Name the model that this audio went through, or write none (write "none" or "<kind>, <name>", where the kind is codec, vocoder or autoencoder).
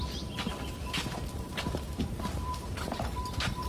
vocoder, BigVGAN v2